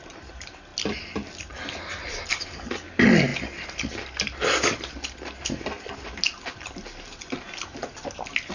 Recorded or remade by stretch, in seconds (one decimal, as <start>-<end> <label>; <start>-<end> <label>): 0.0-8.5 recorded